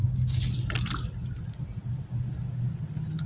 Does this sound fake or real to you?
real